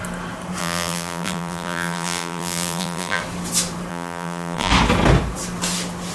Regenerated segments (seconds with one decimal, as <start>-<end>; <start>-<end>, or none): 0.6-3.2; 3.9-4.7